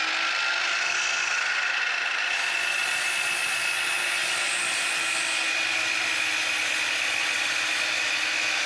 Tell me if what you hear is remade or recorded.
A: recorded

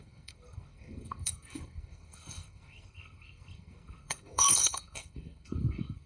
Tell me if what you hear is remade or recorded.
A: remade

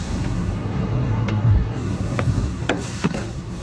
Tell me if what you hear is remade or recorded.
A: remade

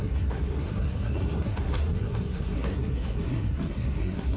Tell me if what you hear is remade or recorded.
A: remade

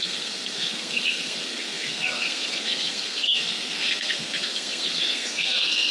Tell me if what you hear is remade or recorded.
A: remade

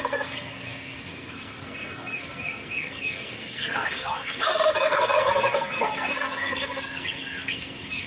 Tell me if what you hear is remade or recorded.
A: remade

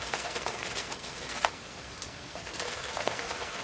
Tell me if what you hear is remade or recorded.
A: remade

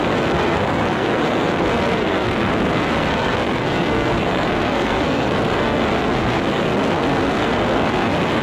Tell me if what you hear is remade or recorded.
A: remade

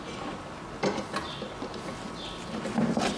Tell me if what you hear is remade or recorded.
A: recorded